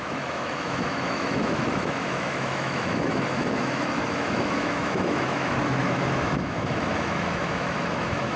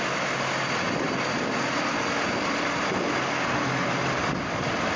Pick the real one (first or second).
second